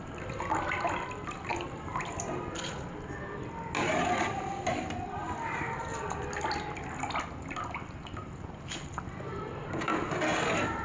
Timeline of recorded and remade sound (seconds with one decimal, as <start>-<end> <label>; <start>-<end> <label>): 0.0-1.5 recorded; 1.5-2.4 remade; 2.4-5.2 recorded; 5.2-5.8 remade; 5.8-10.8 recorded